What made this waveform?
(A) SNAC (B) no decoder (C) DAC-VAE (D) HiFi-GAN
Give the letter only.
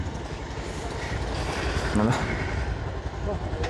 B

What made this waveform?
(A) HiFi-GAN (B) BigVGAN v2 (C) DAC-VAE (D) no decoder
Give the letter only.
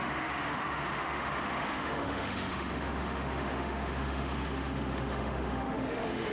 C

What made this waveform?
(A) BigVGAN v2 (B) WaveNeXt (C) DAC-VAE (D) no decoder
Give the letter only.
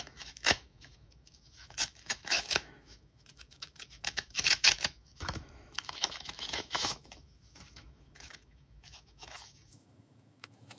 C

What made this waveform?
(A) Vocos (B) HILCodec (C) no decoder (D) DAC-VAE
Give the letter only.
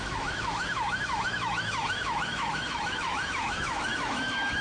D